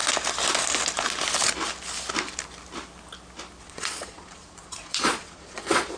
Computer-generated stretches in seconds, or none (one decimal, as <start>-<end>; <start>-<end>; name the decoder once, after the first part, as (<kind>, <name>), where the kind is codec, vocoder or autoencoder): 3.6-6.0 (vocoder, Vocos)